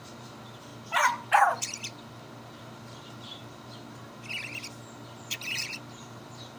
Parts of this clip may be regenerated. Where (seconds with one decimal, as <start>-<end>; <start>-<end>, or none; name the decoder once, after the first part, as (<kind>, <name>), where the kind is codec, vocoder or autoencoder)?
0.0-0.7 (vocoder, BigVGAN v2); 2.6-3.4; 5.5-6.6